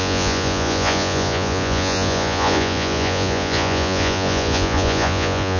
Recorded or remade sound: remade